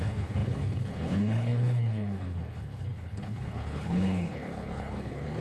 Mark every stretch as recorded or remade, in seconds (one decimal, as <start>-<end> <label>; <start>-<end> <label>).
0.0-5.4 remade